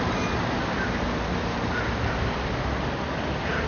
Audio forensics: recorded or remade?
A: recorded